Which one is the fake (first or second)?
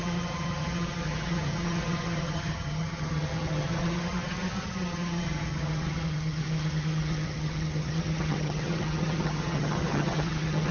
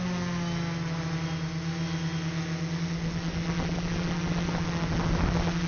first